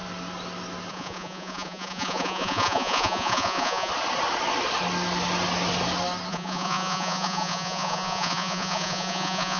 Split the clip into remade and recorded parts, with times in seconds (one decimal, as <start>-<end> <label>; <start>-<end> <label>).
0.0-0.9 recorded; 0.9-3.9 remade; 3.9-6.3 recorded; 6.3-9.6 remade